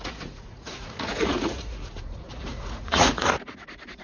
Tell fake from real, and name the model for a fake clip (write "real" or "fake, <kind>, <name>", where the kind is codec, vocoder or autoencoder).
fake, vocoder, Vocos